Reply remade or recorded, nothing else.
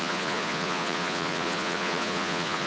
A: remade